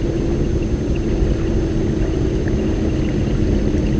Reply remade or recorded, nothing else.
recorded